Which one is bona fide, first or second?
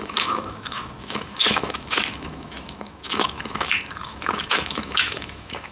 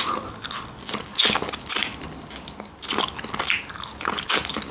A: second